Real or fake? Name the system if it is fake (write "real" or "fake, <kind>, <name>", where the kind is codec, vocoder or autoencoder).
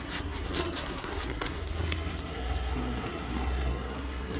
fake, codec, SNAC